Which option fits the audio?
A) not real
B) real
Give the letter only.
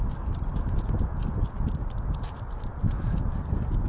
B